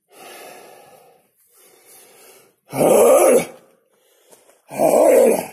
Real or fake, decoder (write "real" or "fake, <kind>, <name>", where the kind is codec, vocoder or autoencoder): real